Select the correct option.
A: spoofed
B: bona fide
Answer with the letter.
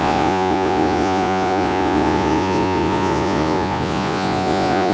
A